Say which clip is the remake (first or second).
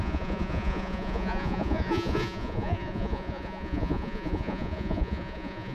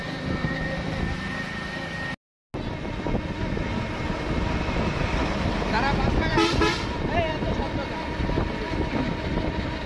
first